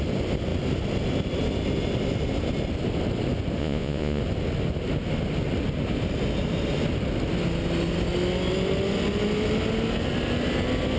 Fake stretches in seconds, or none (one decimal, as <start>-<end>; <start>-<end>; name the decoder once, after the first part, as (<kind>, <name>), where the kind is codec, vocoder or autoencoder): 3.6-4.2 (vocoder, Vocos)